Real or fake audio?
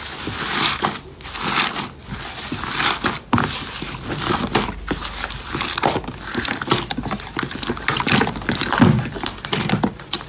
real